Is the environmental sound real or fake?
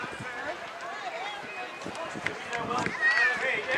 real